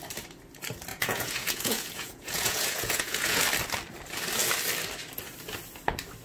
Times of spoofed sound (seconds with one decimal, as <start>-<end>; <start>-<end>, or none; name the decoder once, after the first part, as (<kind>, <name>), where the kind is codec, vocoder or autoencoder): 0.9-3.4 (vocoder, Vocos)